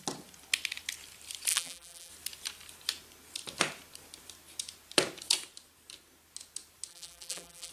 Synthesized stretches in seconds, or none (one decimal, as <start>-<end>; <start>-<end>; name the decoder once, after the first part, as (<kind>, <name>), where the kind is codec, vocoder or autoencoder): 1.5-2.1 (vocoder, BigVGAN v2); 6.9-7.7